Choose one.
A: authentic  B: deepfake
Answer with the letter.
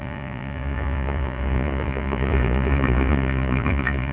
B